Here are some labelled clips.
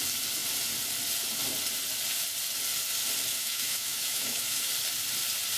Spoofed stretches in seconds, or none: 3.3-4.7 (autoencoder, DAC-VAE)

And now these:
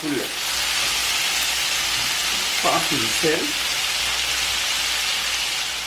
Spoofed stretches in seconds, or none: none

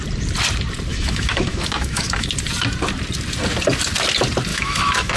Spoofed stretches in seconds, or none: 0.9-2.3 (autoencoder, DAC-VAE); 4.5-5.2

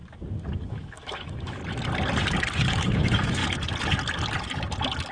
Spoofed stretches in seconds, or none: 0.7-1.6 (autoencoder, DAC-VAE); 2.7-3.4

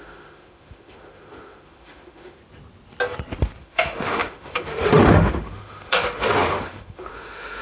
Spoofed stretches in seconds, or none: 0.0-2.4 (autoencoder, DAC-VAE); 3.6-7.6